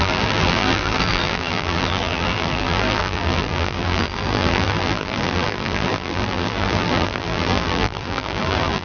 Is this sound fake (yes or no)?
yes